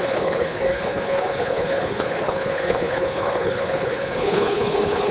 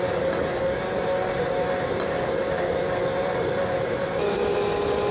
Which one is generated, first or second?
first